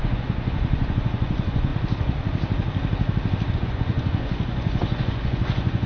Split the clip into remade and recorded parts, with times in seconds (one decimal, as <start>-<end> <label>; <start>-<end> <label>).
0.0-1.7 remade; 1.7-3.5 recorded; 3.5-5.9 remade